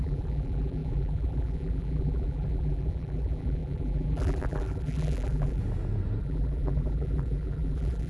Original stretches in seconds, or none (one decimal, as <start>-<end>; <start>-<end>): 5.6-6.2

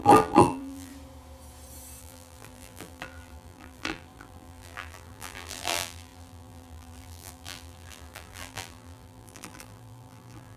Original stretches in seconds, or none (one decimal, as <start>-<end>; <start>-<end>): 0.9-2.0

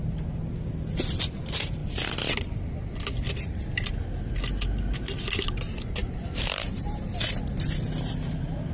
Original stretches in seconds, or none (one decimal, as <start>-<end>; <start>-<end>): 0.0-6.0; 7.1-8.7

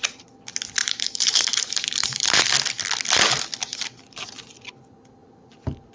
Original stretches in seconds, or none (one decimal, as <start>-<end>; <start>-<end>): 0.0-0.8; 2.4-5.2

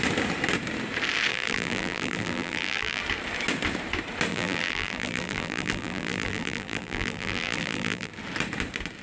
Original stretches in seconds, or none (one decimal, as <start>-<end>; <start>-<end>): 0.0-1.3; 3.0-4.3; 8.1-9.0

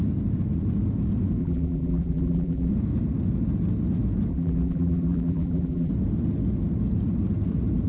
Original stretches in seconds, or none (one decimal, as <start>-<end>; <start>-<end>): 0.0-1.4; 2.7-4.3; 5.9-7.9